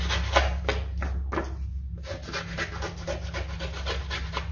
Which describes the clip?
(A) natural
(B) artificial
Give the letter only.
A